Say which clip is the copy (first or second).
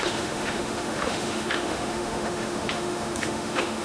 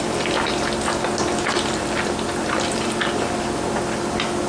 first